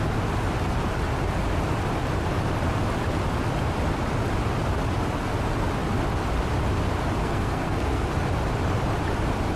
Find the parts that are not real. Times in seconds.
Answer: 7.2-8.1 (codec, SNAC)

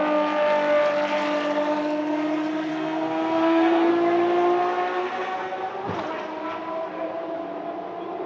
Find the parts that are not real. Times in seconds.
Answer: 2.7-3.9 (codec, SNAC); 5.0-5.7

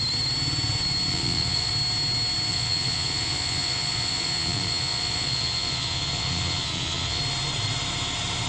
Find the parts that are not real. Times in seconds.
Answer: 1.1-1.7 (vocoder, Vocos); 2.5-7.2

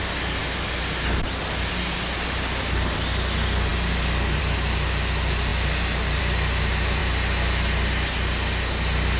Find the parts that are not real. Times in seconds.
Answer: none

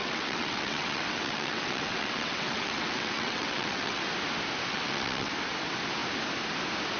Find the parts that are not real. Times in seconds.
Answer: 0.0-4.0 (vocoder, WaveNeXt); 4.7-5.3